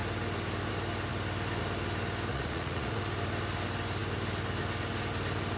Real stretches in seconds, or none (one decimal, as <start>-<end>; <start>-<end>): 0.0-2.3; 3.0-5.6